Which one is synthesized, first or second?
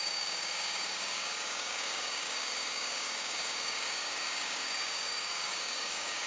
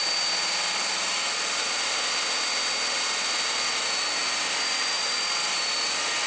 first